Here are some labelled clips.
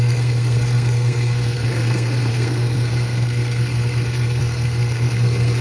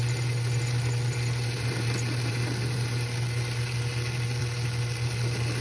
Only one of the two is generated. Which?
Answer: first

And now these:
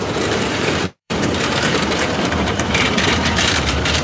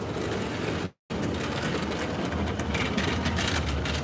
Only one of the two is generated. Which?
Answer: first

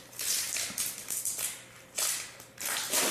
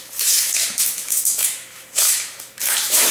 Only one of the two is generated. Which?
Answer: second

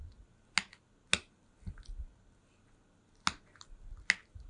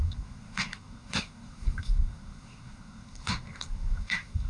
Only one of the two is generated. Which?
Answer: second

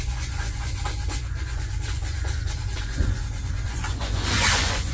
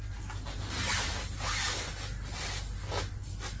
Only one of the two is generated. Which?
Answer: first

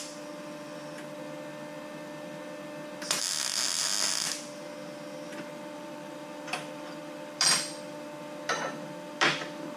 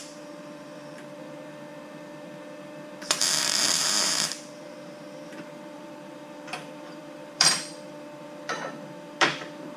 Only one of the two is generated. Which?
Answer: second